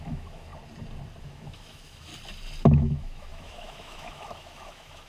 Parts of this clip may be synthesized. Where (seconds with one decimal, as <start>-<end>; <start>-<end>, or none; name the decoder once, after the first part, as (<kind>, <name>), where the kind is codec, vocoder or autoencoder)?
0.0-0.5 (autoencoder, DAC-VAE); 1.2-2.1; 2.6-5.1